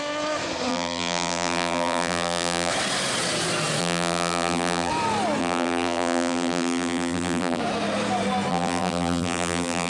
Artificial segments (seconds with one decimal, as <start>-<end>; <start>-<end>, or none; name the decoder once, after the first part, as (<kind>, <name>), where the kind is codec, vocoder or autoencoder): 0.7-2.7 (vocoder, BigVGAN v2); 3.8-4.9; 5.4-7.6; 8.5-9.9